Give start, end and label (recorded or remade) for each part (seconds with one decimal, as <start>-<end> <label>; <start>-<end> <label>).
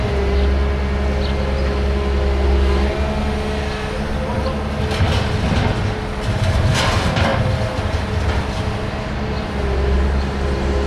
0.0-10.9 recorded